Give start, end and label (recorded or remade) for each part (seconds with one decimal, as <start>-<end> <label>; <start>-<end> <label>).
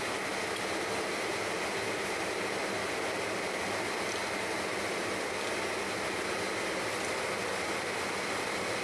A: 0.0-8.8 recorded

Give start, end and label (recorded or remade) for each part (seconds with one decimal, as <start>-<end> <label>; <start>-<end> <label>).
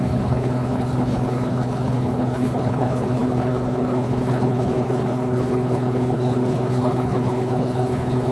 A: 0.0-8.3 remade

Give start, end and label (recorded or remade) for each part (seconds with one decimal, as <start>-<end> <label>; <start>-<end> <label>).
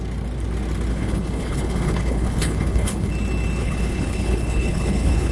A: 0.0-0.9 recorded; 0.9-3.1 remade; 3.1-3.6 recorded; 3.6-5.3 remade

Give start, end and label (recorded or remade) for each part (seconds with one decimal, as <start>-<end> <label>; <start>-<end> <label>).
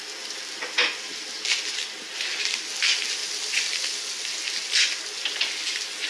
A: 0.0-6.1 recorded